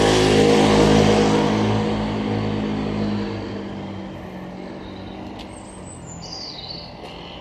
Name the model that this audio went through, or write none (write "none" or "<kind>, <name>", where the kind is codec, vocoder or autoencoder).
none